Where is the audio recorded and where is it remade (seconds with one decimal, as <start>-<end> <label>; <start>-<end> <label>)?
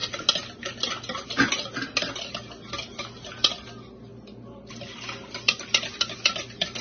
0.0-6.8 recorded